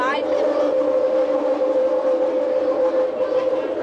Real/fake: real